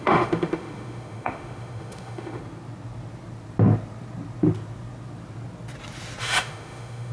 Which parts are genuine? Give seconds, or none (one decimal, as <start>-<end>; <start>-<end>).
2.4-6.2